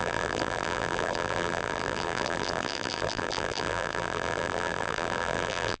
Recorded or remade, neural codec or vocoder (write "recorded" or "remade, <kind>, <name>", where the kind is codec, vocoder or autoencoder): remade, vocoder, BigVGAN v2